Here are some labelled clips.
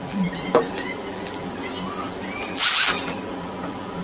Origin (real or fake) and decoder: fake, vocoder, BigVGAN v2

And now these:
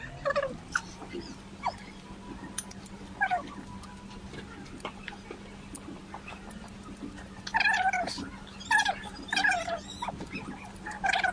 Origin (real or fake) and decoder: fake, vocoder, BigVGAN v2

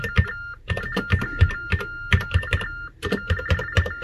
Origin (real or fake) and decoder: real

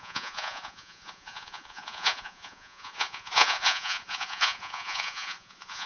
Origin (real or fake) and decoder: fake, vocoder, Vocos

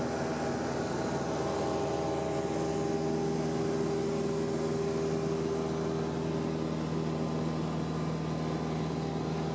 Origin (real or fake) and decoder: real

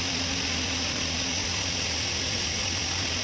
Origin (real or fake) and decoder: fake, vocoder, BigVGAN v2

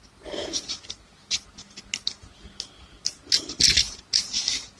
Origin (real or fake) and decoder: real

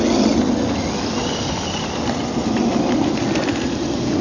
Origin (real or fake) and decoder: real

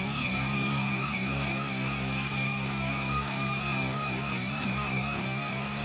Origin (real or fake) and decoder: fake, codec, DAC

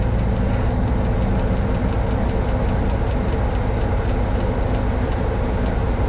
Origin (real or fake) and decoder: real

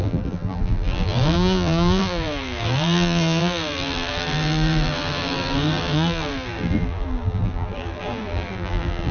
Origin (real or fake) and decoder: fake, vocoder, BigVGAN v2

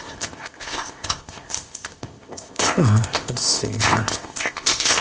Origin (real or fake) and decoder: fake, codec, ZipCodec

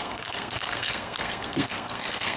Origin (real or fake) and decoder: fake, codec, SNAC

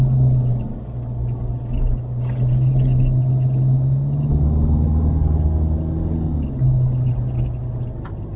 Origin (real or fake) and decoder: real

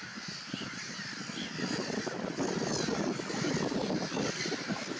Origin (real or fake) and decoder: real